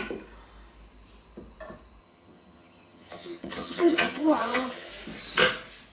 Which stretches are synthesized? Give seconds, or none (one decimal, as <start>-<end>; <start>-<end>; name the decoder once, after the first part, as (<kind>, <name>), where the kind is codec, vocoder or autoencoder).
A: 2.0-4.9 (vocoder, HiFi-GAN)